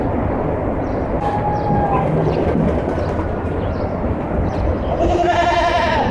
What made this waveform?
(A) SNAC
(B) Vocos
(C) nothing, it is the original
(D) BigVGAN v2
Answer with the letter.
C